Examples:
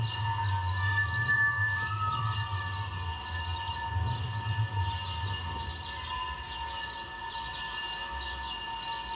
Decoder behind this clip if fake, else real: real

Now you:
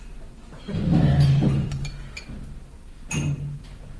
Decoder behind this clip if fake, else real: real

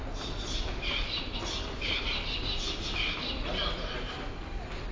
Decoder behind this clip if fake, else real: real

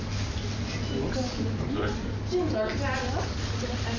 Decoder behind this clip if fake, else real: real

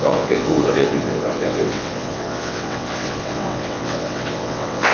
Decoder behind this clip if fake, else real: fake, vocoder, WaveNeXt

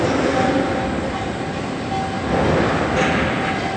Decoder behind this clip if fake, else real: real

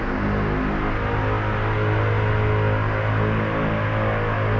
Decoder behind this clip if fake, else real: real